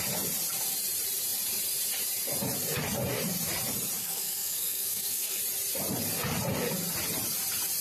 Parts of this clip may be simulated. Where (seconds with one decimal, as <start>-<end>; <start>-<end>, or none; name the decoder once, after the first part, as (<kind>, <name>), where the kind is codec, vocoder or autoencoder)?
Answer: 4.0-5.4 (codec, SNAC)